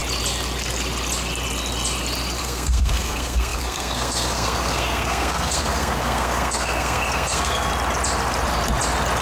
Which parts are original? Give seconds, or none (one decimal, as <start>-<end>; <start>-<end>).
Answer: 0.0-2.4; 7.7-9.2